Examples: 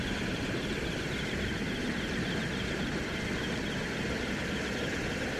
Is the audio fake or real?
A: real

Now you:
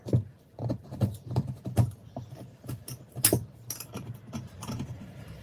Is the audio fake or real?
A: fake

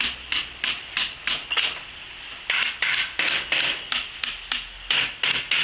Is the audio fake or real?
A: real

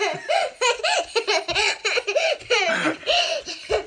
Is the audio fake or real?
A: real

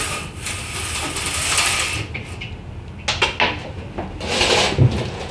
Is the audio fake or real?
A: real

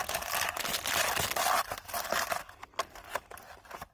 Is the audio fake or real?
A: real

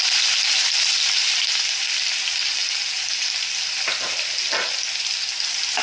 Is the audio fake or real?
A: real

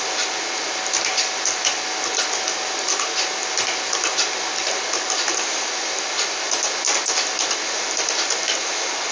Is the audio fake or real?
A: real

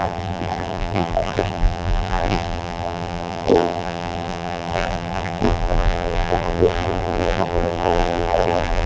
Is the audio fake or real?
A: fake